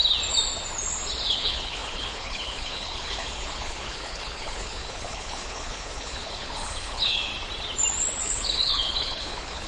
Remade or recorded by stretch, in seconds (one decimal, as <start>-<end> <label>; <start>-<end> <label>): 0.0-1.3 recorded; 1.3-7.3 remade; 7.3-8.2 recorded; 8.2-9.7 remade